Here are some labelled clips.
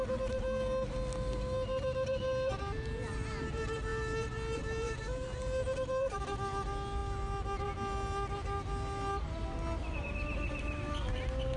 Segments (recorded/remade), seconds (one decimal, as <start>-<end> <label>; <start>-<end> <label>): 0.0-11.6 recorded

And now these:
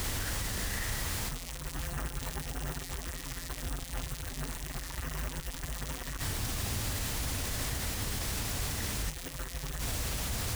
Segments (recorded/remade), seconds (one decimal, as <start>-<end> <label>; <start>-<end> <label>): 0.0-1.3 recorded; 1.3-6.2 remade; 6.2-9.1 recorded; 9.1-9.8 remade; 9.8-10.6 recorded

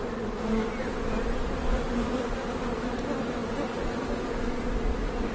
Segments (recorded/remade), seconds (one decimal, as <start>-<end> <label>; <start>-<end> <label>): 0.0-0.8 recorded; 0.8-2.3 remade; 2.3-5.3 recorded